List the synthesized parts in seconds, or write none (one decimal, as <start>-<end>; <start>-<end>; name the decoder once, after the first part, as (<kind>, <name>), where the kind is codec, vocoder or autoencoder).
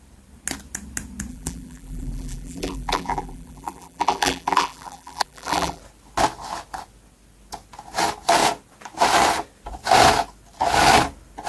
1.3-5.8 (vocoder, BigVGAN v2)